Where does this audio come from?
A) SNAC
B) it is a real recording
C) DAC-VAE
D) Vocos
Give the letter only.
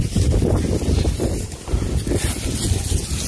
B